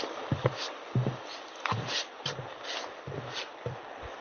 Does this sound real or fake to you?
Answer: real